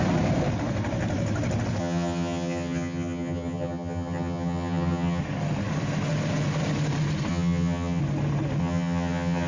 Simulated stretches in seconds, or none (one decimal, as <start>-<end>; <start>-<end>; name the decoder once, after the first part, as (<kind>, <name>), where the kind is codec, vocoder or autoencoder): 1.8-5.2 (vocoder, HiFi-GAN); 7.3-8.0; 8.6-9.5